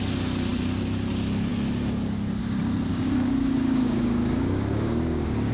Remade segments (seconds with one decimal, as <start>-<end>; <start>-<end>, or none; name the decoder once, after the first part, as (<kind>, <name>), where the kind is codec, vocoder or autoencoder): 2.9-5.5 (codec, DAC)